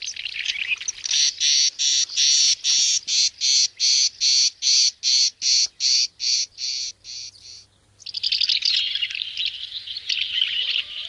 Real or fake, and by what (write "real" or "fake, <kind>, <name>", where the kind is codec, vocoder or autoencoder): real